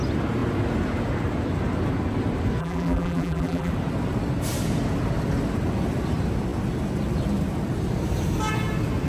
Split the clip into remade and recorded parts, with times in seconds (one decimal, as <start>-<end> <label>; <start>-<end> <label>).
0.0-2.6 recorded; 2.6-3.7 remade; 3.7-9.1 recorded